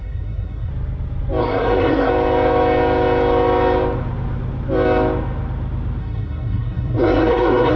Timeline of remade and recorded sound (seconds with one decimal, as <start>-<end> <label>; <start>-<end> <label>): 0.0-0.7 remade; 0.7-1.4 recorded; 1.4-2.1 remade; 2.1-6.0 recorded; 6.0-7.8 remade